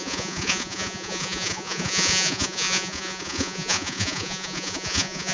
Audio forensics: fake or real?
fake